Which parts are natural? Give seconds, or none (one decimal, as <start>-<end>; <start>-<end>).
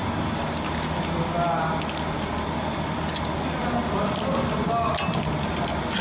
0.0-6.0